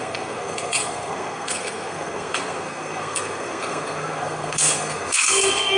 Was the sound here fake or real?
fake